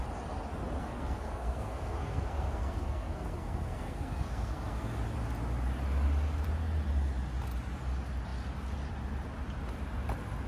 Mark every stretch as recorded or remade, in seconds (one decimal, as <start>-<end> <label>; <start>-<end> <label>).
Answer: 0.0-0.8 recorded; 0.8-4.9 remade; 4.9-10.5 recorded